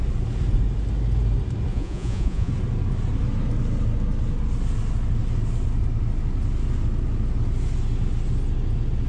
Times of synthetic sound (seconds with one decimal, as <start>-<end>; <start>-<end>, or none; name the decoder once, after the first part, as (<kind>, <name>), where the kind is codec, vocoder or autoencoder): 1.7-2.5 (vocoder, Vocos)